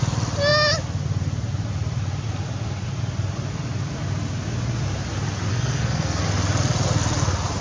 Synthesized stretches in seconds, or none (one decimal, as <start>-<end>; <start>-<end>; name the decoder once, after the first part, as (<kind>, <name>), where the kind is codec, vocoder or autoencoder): 5.5-6.2 (codec, SNAC)